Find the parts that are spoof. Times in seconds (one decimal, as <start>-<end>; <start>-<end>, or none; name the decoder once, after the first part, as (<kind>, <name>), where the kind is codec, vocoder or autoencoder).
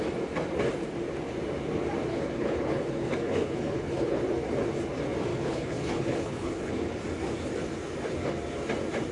2.1-4.2 (codec, HILCodec); 5.3-6.7